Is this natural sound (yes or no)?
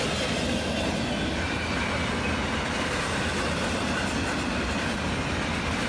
yes